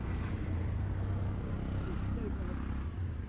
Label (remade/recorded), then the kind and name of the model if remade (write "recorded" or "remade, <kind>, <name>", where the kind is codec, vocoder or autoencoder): recorded